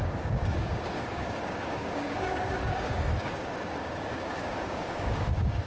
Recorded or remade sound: remade